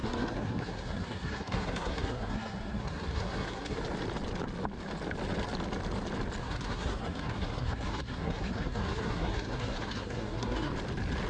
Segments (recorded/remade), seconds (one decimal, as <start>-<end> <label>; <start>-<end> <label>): 0.0-3.8 remade; 3.8-6.4 recorded; 6.4-10.7 remade; 10.7-11.3 recorded